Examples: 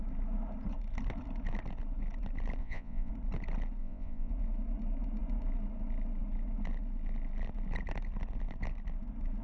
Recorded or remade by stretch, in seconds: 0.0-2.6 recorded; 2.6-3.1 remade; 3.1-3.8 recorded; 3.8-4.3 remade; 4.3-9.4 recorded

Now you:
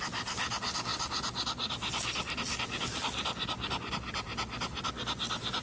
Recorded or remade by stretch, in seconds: 0.0-5.6 recorded